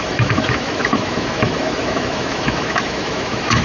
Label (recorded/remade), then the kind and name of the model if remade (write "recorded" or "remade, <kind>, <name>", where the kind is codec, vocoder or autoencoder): remade, autoencoder, DAC-VAE